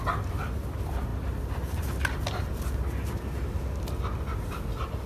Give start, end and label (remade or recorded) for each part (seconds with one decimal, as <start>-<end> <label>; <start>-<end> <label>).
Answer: 0.0-5.1 recorded